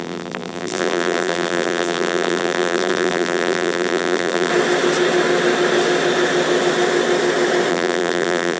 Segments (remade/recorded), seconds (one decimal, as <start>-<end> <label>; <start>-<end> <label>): 0.0-4.5 remade; 4.5-7.7 recorded; 7.7-8.6 remade